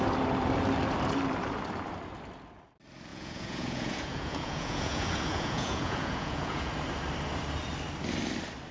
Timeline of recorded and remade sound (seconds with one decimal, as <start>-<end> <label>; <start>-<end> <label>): 0.0-3.1 recorded; 3.1-6.7 remade; 6.7-8.7 recorded